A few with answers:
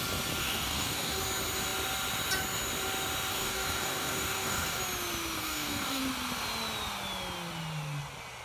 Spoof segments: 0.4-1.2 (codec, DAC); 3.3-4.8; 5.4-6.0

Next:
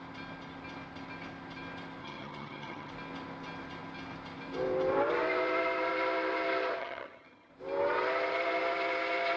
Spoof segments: 2.0-2.9 (vocoder, HiFi-GAN); 6.8-7.5